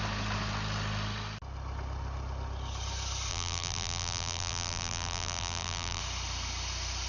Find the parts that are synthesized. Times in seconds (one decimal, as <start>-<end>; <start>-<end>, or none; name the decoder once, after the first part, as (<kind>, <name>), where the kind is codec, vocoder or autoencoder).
3.3-6.0 (vocoder, BigVGAN v2)